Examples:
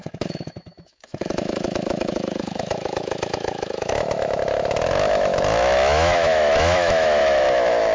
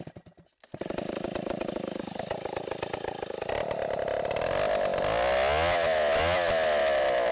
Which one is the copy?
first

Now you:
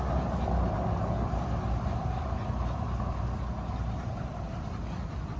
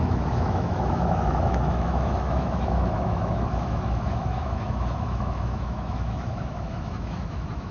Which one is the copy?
second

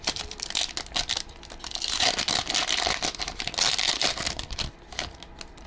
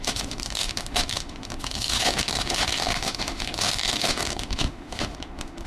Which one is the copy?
second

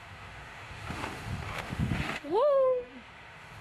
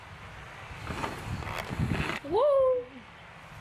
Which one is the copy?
first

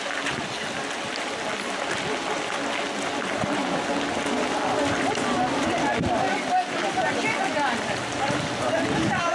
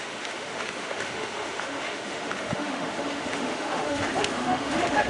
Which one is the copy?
second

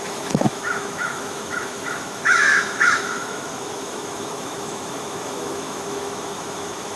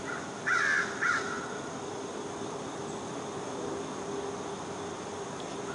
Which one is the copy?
first